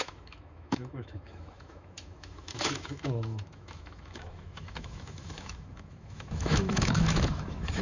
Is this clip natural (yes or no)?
no